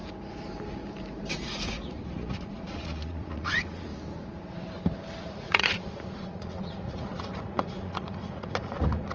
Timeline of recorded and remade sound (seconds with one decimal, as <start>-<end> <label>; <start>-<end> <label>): 0.0-1.3 recorded; 1.3-3.9 remade; 3.9-5.2 recorded; 5.2-9.1 remade